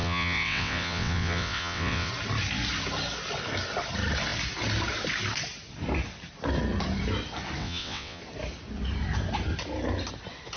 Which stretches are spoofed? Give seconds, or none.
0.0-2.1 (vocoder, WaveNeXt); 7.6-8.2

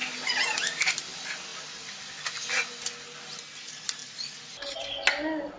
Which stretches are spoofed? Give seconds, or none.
none

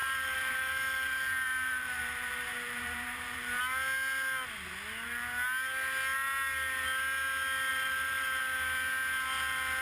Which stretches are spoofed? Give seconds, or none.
0.0-3.6 (vocoder, BigVGAN v2); 7.7-8.4

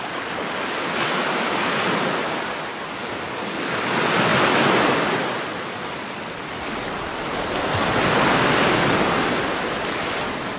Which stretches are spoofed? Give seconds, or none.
none

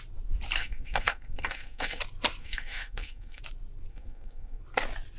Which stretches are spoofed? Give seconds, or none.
0.6-2.0 (codec, SNAC); 2.4-3.4; 3.9-4.6